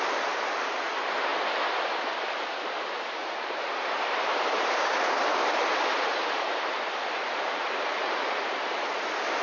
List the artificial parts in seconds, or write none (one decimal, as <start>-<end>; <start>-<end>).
3.2-8.1